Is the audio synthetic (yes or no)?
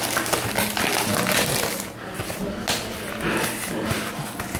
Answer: no